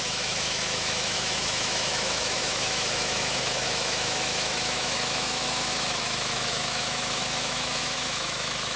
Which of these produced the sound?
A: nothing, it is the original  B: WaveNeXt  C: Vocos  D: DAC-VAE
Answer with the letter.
D